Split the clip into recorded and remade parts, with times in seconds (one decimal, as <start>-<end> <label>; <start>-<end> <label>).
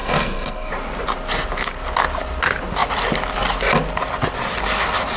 0.0-0.7 remade; 0.7-5.2 recorded